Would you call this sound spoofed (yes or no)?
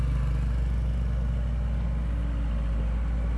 no